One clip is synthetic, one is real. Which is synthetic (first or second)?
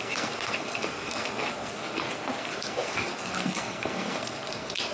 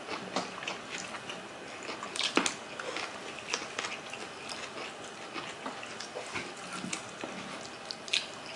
first